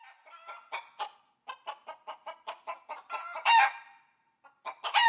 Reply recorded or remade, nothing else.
recorded